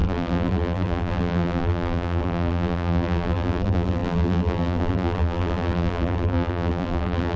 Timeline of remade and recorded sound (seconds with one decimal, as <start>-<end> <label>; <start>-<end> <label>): 0.0-7.4 remade